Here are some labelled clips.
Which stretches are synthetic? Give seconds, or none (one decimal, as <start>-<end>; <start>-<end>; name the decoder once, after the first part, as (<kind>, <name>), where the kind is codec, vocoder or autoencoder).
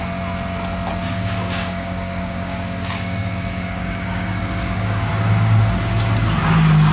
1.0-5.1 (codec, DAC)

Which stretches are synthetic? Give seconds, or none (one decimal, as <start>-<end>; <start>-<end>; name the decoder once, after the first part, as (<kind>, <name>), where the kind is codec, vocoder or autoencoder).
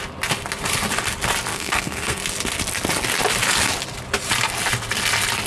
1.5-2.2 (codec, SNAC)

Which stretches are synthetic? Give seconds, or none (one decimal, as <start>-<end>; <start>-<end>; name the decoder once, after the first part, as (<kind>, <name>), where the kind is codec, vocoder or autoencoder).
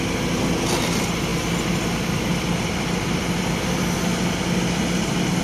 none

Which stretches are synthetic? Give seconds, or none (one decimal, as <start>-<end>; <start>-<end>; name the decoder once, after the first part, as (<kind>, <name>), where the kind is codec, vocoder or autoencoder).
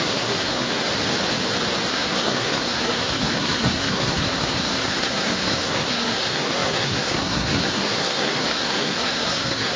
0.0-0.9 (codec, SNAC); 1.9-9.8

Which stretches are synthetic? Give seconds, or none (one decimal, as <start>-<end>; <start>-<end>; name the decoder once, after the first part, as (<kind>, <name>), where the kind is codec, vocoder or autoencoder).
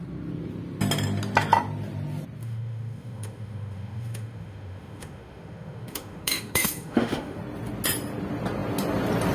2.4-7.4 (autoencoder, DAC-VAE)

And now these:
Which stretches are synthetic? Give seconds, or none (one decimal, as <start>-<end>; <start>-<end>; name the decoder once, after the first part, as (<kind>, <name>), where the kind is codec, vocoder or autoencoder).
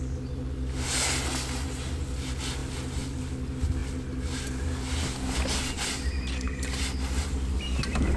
2.6-3.2 (vocoder, BigVGAN v2)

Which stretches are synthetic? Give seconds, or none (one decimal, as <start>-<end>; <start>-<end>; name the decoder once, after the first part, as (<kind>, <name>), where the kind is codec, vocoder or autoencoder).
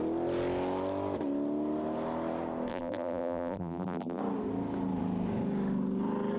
2.7-4.2 (vocoder, BigVGAN v2)